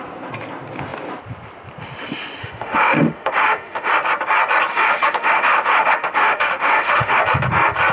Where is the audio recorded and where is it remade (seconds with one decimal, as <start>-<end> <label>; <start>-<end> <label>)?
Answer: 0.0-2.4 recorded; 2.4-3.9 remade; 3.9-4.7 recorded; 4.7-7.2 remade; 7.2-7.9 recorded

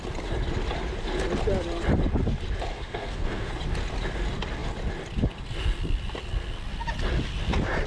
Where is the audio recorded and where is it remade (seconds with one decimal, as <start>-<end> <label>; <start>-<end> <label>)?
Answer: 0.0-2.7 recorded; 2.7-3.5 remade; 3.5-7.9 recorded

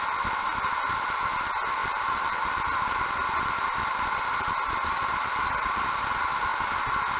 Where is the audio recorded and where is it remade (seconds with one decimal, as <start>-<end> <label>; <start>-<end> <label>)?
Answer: 0.0-7.2 recorded

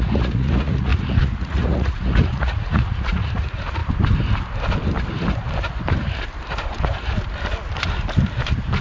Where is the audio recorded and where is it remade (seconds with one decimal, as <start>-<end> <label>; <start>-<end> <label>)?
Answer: 0.0-3.8 remade; 3.8-8.8 recorded

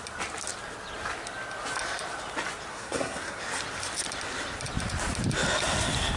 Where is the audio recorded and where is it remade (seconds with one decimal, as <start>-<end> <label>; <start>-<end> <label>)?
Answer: 0.0-2.7 recorded; 2.7-3.4 remade; 3.4-6.2 recorded

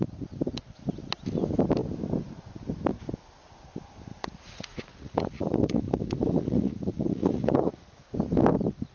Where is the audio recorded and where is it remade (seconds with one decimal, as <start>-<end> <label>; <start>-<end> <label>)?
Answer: 0.0-4.1 recorded; 4.1-8.0 remade; 8.0-8.9 recorded